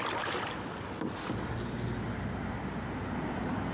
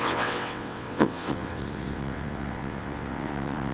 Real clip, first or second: first